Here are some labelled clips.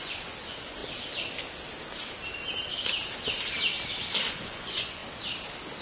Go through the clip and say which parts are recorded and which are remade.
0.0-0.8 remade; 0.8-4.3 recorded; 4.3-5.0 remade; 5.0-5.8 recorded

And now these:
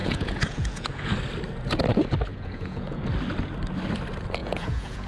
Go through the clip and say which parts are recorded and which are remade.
0.0-1.1 remade; 1.1-2.3 recorded; 2.3-3.0 remade; 3.0-4.4 recorded; 4.4-5.1 remade

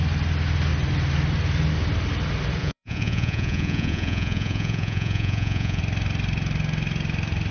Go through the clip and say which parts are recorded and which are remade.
0.0-2.6 recorded; 2.6-5.8 remade; 5.8-7.5 recorded

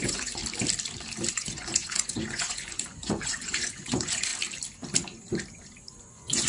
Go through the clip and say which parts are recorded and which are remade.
0.0-0.4 remade; 0.4-1.3 recorded; 1.3-4.3 remade; 4.3-6.0 recorded; 6.0-6.5 remade

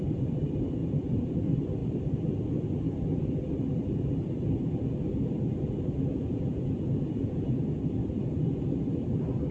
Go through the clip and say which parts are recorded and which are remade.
0.0-0.8 recorded; 0.8-1.3 remade; 1.3-6.1 recorded; 6.1-7.6 remade; 7.6-9.5 recorded